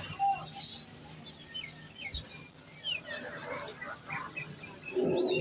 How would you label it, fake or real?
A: real